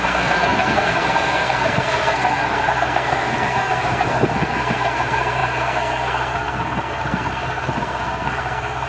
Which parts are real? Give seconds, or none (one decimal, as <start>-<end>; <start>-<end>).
none